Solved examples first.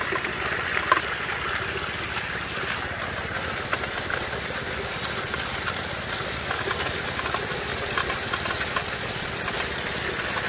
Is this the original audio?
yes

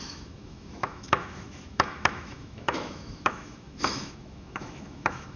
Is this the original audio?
no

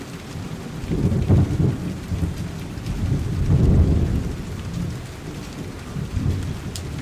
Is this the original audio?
yes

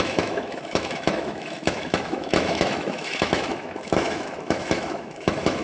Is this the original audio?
no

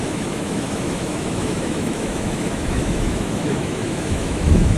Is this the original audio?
no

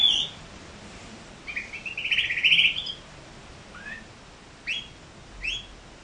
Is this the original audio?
yes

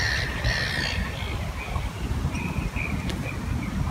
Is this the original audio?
yes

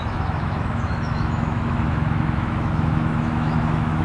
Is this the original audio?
no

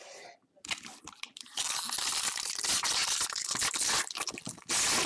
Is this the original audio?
yes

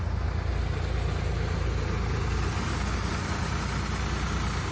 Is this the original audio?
yes